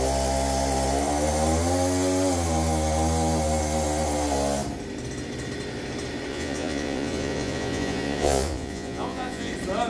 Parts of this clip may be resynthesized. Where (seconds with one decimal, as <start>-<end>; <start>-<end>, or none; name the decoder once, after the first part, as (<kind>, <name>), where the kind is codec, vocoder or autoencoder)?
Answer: 6.3-9.5 (vocoder, Vocos)